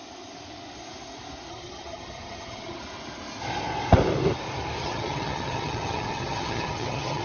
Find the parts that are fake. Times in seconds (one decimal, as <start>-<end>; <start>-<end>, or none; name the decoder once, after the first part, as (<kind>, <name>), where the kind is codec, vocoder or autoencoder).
1.5-2.8 (vocoder, HiFi-GAN); 4.8-7.2